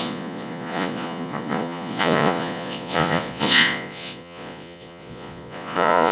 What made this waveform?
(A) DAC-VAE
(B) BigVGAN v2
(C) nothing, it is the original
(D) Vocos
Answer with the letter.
D